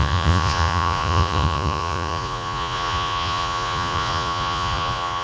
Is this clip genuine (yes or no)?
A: no